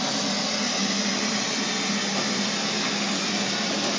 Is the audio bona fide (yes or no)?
yes